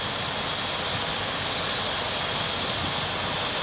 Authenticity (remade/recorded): recorded